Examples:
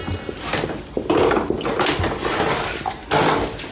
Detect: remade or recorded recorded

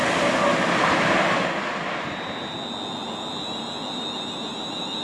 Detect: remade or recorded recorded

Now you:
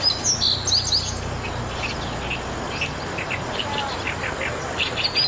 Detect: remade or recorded recorded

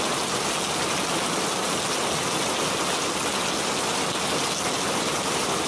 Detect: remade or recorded recorded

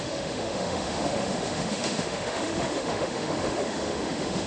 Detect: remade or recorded remade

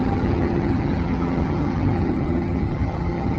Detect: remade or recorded remade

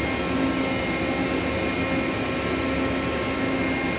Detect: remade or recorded recorded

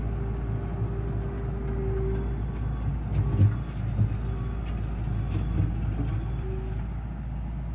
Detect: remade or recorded recorded